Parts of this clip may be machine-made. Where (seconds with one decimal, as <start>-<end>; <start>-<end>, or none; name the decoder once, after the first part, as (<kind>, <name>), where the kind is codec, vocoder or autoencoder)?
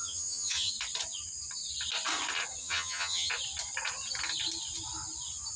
0.0-0.7 (vocoder, HiFi-GAN); 2.6-3.3